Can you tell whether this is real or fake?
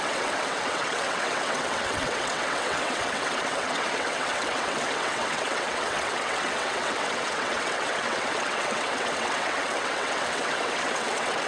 fake